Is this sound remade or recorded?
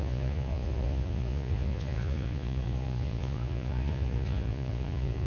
remade